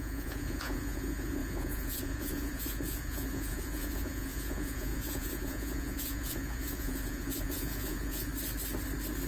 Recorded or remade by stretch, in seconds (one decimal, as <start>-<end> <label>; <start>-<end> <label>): 0.0-8.3 remade; 8.3-9.3 recorded